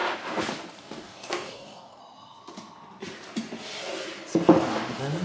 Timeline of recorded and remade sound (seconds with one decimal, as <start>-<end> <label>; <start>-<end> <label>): 0.0-0.8 recorded; 0.8-2.0 remade; 2.0-5.2 recorded